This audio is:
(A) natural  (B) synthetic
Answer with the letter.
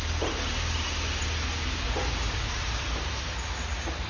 A